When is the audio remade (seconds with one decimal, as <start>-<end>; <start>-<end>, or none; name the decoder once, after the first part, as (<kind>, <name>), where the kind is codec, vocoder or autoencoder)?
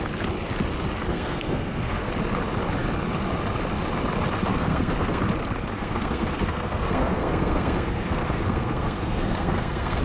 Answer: 1.1-2.1 (codec, SNAC); 4.5-5.2; 5.7-10.0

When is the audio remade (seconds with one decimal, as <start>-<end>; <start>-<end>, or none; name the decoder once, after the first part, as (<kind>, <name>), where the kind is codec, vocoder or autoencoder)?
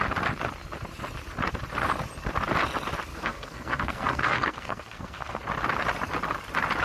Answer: 3.1-5.4 (codec, SNAC)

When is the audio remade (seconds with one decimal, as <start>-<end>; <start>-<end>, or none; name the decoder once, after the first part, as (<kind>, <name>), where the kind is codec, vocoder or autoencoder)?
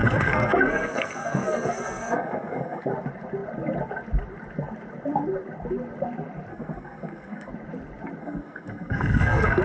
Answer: 0.0-2.9 (codec, SNAC); 6.5-7.5; 8.2-9.6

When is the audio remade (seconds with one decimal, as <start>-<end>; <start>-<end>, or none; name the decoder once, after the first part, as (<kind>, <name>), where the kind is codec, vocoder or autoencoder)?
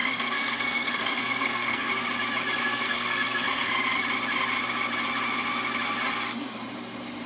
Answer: 0.0-1.9 (codec, SNAC); 2.6-3.7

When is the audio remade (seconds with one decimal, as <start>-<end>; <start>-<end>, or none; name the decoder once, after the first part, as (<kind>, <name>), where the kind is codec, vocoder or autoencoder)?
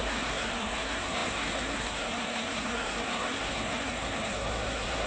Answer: 0.0-5.1 (codec, SNAC)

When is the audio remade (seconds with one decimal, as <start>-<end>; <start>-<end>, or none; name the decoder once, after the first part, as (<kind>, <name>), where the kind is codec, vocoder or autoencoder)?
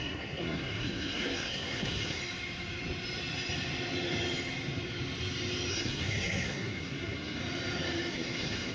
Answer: 0.0-2.2 (codec, SNAC); 5.7-7.4; 8.1-8.7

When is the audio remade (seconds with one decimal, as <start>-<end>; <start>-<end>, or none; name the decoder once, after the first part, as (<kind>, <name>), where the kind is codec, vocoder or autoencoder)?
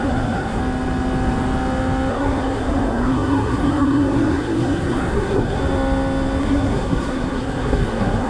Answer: 0.0-0.6 (codec, SNAC); 2.1-5.6; 6.4-8.3